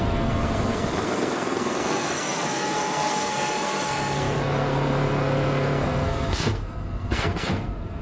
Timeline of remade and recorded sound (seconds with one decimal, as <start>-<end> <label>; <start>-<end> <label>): 0.0-8.0 remade